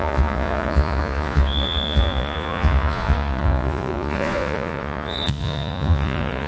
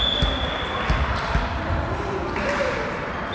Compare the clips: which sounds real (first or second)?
second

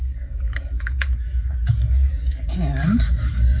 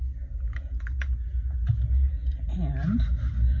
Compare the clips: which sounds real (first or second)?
second